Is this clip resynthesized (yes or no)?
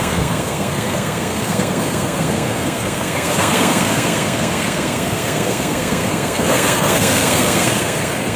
yes